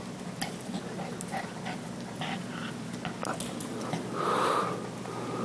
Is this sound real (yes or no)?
yes